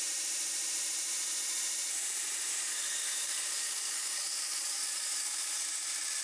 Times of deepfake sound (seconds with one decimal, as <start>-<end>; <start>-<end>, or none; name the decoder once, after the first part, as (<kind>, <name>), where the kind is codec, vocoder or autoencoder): 2.5-5.6 (codec, DAC)